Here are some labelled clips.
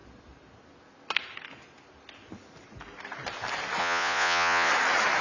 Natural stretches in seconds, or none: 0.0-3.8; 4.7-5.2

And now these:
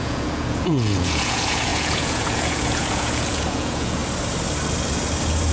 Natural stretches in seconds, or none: 4.0-5.5

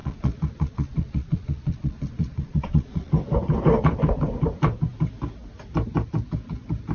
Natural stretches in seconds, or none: 3.1-6.9

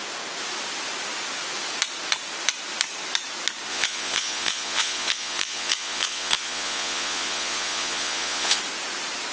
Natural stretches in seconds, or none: 0.0-3.7; 8.6-9.3

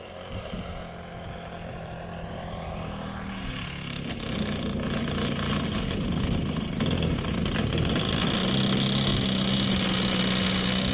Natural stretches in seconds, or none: 0.0-10.9